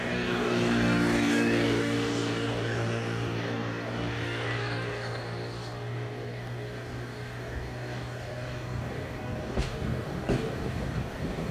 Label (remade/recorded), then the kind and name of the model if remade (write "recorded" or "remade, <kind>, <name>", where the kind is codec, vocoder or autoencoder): remade, codec, DAC